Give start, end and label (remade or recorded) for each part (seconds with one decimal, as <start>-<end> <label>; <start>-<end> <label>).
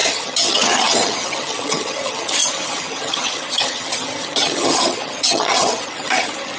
0.0-6.6 remade